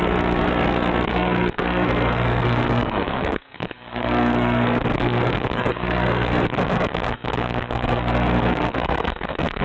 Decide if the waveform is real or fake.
fake